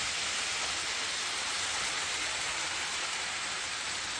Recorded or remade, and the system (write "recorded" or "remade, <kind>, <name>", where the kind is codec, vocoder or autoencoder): recorded